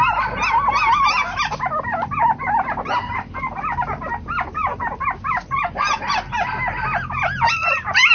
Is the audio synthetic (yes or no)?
no